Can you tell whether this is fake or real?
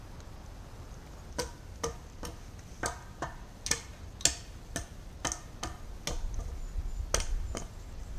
real